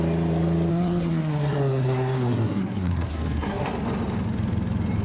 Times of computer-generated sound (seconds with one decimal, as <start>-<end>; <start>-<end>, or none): 0.7-3.7